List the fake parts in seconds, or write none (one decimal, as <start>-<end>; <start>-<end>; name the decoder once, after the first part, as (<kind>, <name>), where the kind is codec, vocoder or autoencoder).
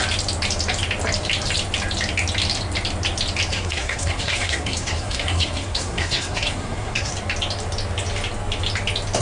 3.5-7.1 (codec, SNAC)